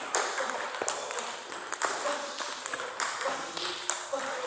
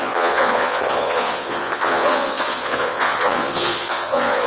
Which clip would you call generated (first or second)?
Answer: second